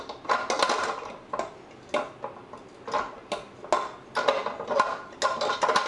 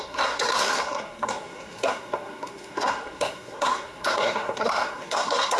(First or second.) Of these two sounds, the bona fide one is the first